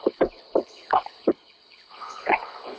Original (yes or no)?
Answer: no